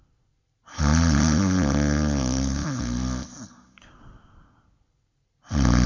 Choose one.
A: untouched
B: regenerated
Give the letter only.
A